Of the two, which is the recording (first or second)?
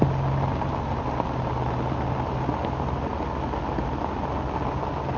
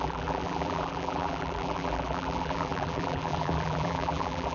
first